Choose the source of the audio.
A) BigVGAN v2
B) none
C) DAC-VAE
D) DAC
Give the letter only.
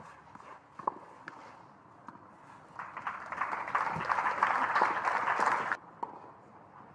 B